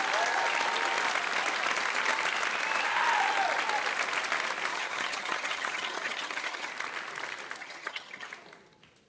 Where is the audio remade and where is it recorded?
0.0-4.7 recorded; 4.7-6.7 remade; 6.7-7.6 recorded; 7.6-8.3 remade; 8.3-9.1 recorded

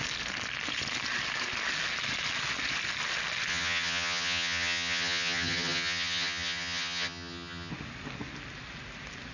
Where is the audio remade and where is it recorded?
0.0-3.5 recorded; 3.5-7.7 remade; 7.7-9.3 recorded